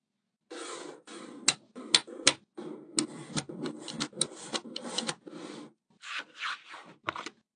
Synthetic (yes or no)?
no